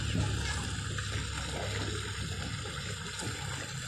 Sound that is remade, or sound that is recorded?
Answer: recorded